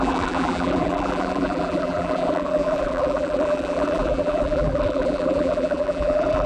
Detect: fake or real fake